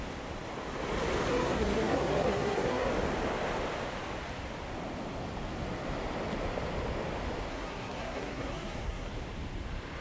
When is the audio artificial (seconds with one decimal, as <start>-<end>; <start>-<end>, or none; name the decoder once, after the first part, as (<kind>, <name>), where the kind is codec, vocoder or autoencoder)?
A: 1.3-2.9 (codec, SNAC); 7.5-9.1